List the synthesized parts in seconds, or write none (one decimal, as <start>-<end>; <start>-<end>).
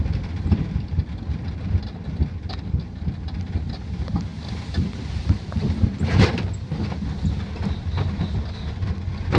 none